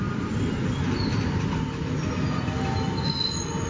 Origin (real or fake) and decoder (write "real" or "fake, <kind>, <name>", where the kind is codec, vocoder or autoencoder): real